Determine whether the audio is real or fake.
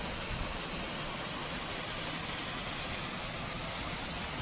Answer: real